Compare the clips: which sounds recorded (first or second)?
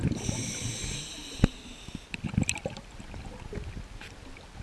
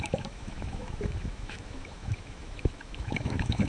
first